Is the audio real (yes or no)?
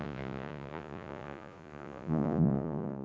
no